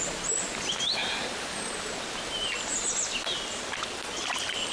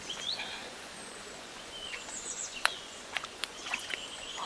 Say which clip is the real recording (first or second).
first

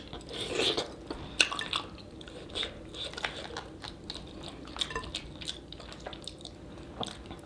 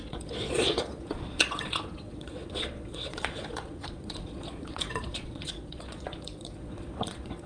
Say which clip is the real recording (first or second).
first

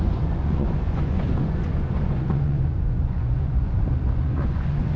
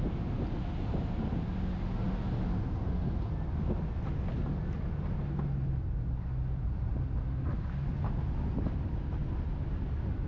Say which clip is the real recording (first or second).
second